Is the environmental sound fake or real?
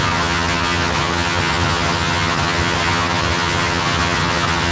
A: fake